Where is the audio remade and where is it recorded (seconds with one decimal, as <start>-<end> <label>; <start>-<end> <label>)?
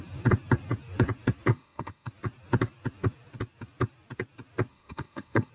0.0-1.5 recorded; 1.5-2.1 remade; 2.1-4.7 recorded; 4.7-5.5 remade